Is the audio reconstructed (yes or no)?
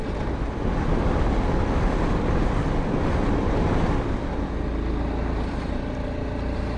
no